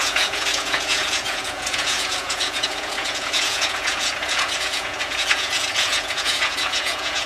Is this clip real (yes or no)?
no